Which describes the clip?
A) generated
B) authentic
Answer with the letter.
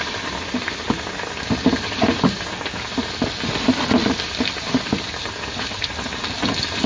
B